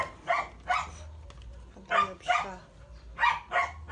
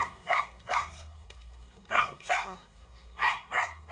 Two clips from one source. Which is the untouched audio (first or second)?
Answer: first